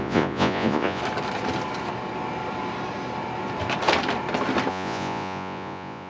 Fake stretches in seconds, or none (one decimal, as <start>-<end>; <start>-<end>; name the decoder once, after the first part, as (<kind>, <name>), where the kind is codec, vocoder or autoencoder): 0.0-1.0 (vocoder, Vocos); 4.7-6.1

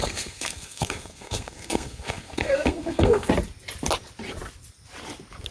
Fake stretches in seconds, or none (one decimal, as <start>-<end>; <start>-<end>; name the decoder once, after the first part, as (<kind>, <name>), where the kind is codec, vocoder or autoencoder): 0.0-3.3 (codec, SNAC)

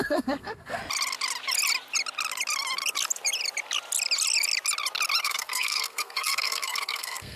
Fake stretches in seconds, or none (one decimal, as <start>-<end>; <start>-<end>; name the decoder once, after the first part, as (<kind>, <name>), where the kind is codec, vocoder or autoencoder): 0.0-0.8 (codec, SNAC); 5.2-7.4